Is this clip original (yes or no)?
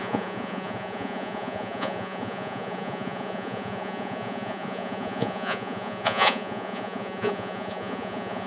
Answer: no